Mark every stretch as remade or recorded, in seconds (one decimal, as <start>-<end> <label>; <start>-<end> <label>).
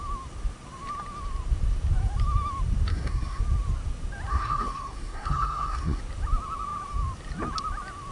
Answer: 0.0-2.9 recorded; 2.9-3.4 remade; 3.4-4.3 recorded; 4.3-6.0 remade; 6.0-8.1 recorded